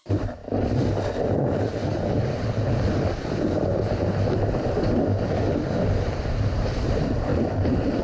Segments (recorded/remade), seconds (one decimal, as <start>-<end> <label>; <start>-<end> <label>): 0.0-0.4 remade; 0.4-3.0 recorded; 3.0-3.7 remade; 3.7-6.5 recorded; 6.5-8.0 remade